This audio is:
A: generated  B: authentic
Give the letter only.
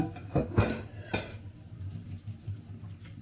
B